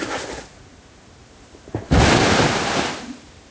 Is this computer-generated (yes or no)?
no